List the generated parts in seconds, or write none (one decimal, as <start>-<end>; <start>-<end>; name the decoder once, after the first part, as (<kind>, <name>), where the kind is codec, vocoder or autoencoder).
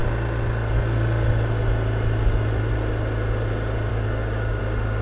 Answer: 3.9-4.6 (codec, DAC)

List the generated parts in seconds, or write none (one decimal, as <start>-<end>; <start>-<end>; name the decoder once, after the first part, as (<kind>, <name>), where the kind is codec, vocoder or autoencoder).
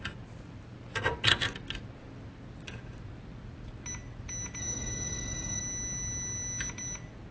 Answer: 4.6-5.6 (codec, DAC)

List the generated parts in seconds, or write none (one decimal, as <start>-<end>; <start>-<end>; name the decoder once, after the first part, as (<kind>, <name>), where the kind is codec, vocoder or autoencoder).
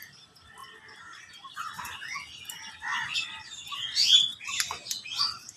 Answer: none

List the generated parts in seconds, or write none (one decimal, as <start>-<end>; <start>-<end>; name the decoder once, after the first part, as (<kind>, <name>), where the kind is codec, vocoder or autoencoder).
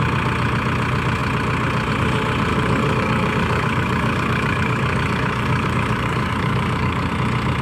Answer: 2.5-7.1 (codec, DAC)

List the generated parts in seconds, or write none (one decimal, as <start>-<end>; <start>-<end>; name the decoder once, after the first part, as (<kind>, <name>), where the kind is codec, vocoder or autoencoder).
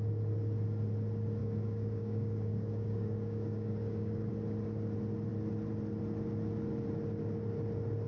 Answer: 1.4-4.3 (codec, DAC)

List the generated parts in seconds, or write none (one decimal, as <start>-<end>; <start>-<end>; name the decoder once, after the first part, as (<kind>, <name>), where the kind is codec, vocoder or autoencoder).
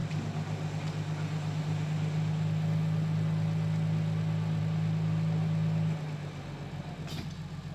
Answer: none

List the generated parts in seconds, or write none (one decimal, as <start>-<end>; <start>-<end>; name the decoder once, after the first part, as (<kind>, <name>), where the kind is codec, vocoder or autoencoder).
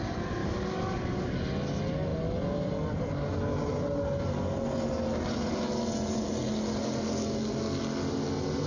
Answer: 0.4-1.4 (codec, DAC)